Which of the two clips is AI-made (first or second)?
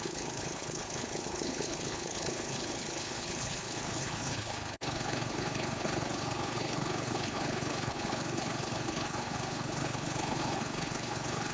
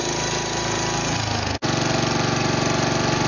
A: first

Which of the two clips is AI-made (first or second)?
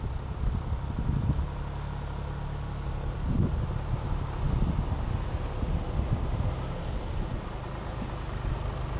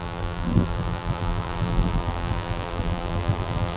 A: second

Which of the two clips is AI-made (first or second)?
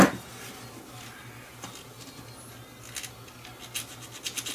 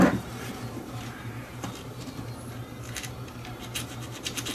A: second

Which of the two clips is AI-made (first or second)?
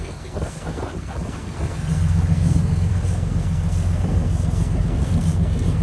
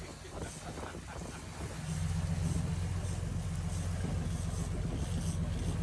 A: first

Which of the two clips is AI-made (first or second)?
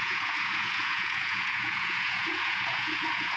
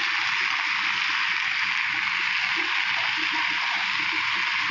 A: first